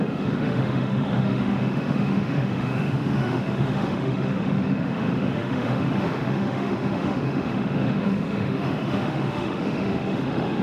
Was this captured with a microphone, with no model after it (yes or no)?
no